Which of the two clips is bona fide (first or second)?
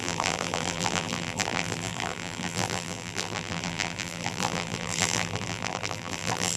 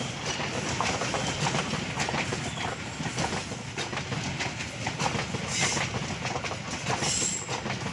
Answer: second